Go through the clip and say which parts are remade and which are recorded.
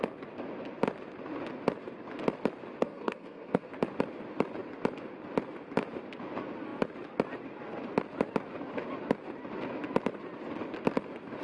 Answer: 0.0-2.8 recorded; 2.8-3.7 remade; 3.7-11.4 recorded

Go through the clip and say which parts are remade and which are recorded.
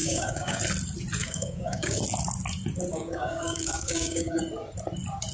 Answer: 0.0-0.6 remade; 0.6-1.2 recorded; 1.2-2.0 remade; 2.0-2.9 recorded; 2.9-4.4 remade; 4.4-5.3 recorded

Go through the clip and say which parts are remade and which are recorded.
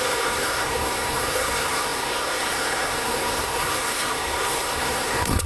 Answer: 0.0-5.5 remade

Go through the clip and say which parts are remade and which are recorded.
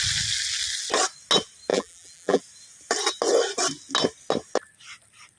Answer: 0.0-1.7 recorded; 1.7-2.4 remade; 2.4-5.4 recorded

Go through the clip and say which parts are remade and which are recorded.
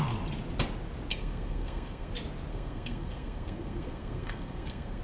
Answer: 0.0-1.1 recorded; 1.1-2.1 remade; 2.1-2.5 recorded; 2.5-5.0 remade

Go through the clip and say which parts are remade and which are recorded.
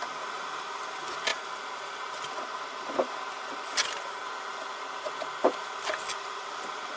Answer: 0.0-7.0 recorded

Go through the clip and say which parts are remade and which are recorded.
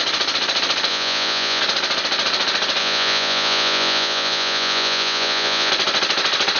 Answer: 0.0-0.9 recorded; 0.9-1.6 remade; 1.6-2.8 recorded; 2.8-5.7 remade; 5.7-6.6 recorded